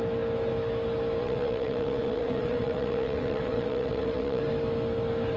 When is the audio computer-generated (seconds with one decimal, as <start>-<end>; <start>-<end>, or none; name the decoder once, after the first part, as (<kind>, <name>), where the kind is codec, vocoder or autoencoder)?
1.2-4.4 (vocoder, WaveNeXt)